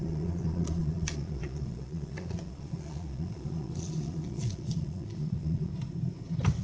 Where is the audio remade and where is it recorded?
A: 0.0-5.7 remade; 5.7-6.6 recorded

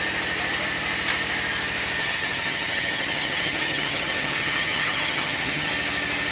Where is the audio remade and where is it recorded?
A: 0.0-2.0 recorded; 2.0-5.7 remade; 5.7-6.3 recorded

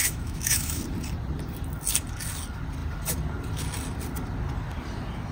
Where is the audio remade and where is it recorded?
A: 0.0-0.8 remade; 0.8-5.3 recorded